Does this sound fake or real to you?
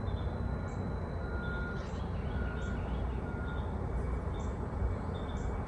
real